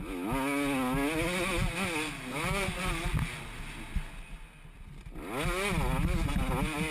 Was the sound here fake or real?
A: real